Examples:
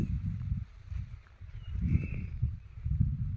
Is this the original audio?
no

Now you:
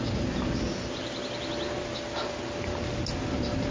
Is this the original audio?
yes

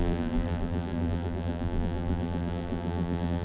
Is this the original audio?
no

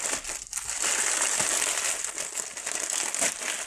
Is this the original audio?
yes